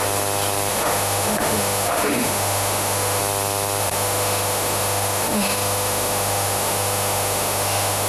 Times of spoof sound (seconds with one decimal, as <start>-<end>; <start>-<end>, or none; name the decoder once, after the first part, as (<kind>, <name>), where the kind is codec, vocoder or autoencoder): 0.7-3.2 (autoencoder, DAC-VAE); 3.8-8.1